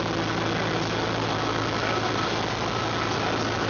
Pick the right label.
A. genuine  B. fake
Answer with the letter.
A